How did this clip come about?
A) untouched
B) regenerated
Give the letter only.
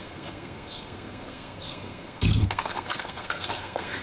B